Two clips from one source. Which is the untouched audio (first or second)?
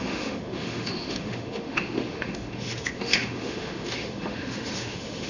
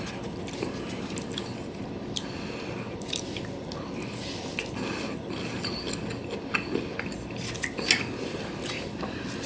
second